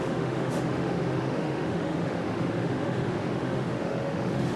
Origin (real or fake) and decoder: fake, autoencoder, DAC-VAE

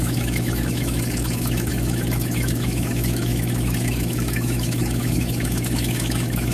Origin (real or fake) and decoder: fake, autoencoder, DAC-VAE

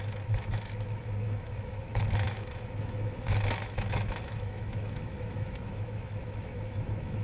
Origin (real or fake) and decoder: fake, autoencoder, DAC-VAE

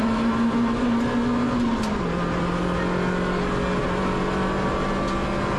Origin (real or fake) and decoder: real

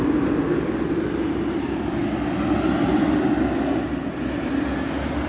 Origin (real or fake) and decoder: real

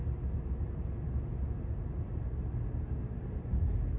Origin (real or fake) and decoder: real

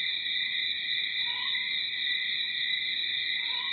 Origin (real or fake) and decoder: real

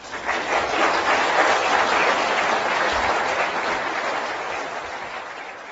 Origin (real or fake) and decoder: real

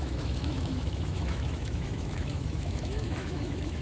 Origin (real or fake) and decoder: fake, autoencoder, DAC-VAE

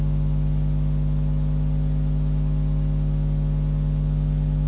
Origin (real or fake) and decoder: real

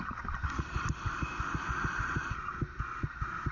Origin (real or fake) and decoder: real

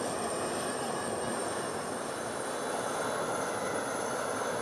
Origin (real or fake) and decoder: real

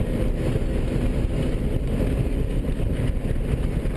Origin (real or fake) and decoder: real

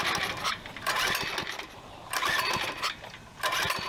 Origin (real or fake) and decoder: real